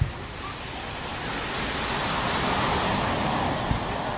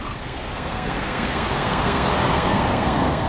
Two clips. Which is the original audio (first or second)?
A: first